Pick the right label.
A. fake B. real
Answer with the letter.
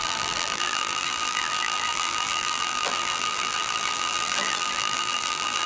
A